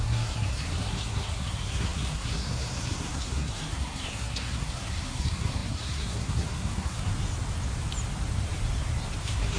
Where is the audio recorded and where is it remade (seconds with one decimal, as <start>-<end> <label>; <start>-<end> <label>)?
0.0-7.1 remade; 7.1-9.2 recorded; 9.2-9.6 remade